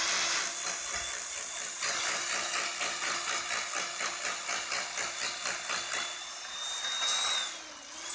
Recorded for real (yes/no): yes